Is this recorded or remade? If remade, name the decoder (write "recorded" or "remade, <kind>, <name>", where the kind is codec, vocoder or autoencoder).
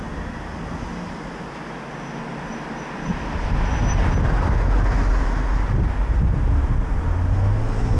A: recorded